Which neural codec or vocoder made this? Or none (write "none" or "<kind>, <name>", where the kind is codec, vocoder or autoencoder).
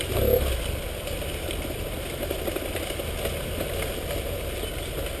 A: none